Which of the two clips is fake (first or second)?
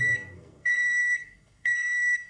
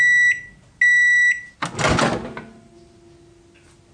first